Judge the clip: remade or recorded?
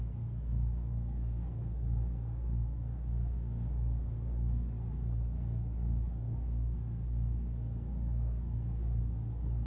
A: remade